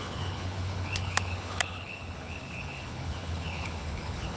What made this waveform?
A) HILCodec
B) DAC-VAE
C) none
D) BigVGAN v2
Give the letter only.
A